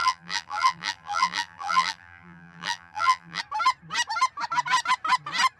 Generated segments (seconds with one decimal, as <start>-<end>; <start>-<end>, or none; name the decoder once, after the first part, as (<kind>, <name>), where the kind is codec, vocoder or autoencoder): 0.0-3.4 (vocoder, BigVGAN v2)